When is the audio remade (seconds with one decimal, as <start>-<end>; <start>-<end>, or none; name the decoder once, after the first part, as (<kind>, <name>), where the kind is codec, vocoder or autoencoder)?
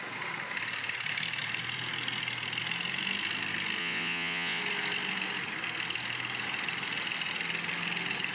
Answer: 3.8-4.6 (vocoder, WaveNeXt)